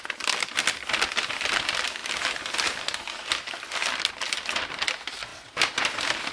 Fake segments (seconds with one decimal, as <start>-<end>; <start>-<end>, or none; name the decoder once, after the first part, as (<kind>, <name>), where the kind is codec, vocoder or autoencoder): none